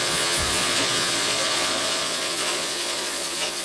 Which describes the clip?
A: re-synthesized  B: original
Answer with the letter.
A